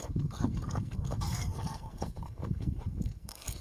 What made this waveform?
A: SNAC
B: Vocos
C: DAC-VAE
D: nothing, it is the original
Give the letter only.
A